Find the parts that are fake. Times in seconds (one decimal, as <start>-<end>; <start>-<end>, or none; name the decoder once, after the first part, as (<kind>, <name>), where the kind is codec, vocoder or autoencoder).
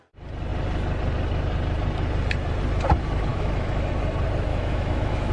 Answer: 3.3-3.9 (autoencoder, DAC-VAE); 4.5-5.3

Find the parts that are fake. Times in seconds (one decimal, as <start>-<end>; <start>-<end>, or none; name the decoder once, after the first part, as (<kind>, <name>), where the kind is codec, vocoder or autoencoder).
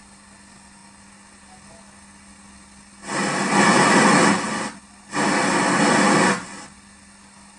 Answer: none